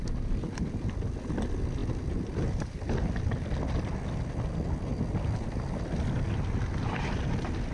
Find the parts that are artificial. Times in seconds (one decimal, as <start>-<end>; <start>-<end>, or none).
none